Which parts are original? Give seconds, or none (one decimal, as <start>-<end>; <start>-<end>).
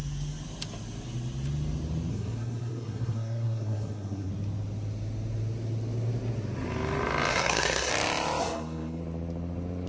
0.0-2.1; 4.3-7.3; 7.9-8.4; 9.0-9.9